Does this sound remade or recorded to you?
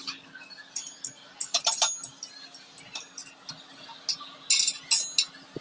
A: recorded